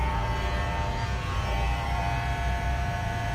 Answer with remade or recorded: remade